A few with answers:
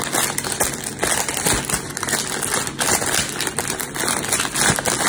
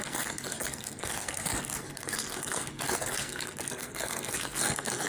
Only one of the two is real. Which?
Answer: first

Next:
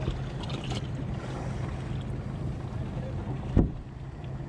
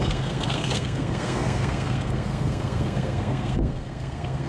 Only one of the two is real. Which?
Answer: first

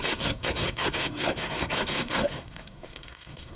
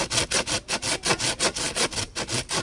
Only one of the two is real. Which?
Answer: second